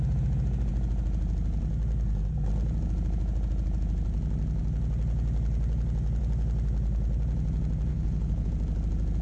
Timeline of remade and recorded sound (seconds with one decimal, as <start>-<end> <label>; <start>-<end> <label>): 0.0-7.9 recorded; 7.9-8.5 remade; 8.5-9.2 recorded